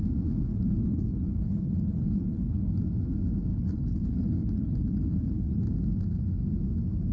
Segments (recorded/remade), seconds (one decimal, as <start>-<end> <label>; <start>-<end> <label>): 0.0-0.5 recorded; 0.5-2.8 remade; 2.8-3.5 recorded; 3.5-5.6 remade; 5.6-7.1 recorded